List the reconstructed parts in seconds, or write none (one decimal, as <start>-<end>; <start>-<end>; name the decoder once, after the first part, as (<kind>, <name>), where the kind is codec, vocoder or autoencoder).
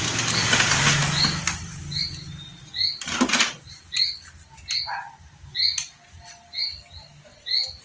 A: none